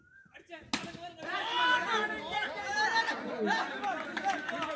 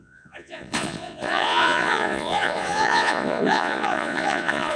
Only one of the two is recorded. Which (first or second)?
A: first